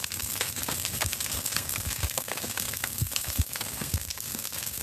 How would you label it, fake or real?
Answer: fake